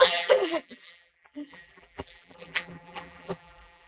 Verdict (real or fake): fake